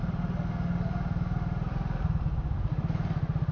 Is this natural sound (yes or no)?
yes